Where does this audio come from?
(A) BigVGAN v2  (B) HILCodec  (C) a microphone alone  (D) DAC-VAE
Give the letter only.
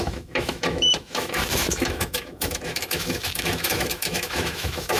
D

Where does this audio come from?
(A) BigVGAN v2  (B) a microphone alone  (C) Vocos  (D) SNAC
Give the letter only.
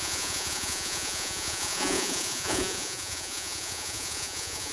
C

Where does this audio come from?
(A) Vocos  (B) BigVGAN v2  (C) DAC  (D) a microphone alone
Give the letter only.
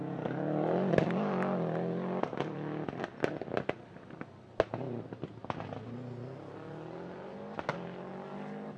D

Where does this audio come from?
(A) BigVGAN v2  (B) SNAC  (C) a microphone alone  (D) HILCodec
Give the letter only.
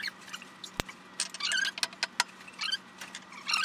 C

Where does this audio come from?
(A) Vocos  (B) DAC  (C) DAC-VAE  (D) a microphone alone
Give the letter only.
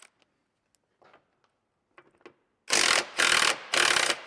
D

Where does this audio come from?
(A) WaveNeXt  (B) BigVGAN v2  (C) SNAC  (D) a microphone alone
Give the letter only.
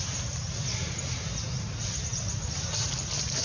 D